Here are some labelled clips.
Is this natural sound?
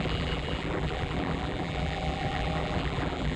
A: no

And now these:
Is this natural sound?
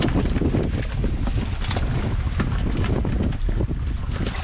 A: yes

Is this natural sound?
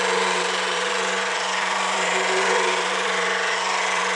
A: no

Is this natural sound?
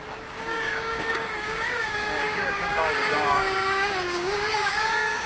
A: no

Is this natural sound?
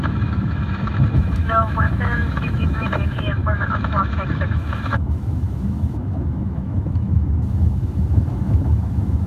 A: no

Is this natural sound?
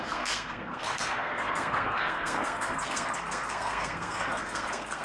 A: no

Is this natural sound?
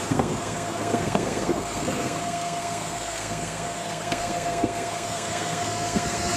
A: no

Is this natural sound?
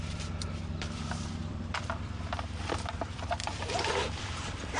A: no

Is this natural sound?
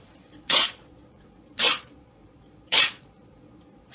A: no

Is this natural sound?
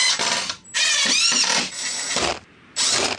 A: yes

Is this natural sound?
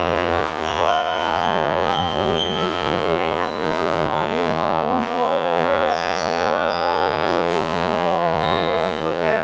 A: no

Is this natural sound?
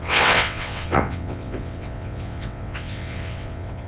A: no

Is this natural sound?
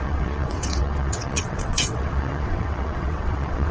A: no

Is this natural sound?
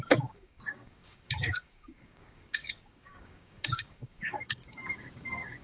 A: no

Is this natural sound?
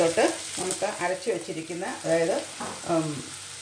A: yes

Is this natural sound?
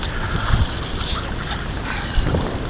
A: yes